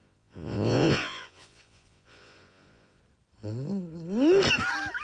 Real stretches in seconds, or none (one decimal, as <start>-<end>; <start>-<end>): 3.0-5.0